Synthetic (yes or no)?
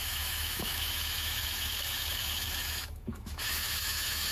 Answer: yes